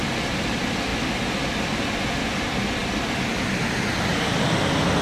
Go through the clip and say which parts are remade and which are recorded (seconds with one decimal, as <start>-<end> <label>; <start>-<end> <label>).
0.0-5.0 recorded